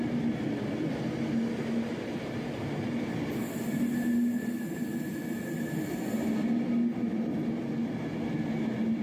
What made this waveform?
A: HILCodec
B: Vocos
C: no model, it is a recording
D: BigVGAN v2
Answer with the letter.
C